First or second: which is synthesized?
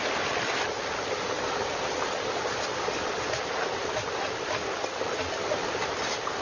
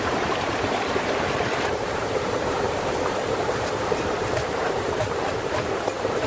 second